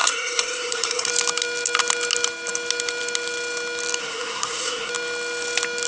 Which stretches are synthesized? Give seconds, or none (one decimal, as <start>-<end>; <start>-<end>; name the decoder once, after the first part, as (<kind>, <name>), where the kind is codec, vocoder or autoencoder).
0.0-1.1 (codec, SNAC); 4.0-4.9